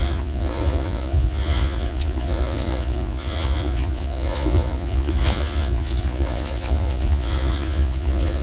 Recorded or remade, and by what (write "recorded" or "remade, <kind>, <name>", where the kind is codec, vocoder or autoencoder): remade, vocoder, Vocos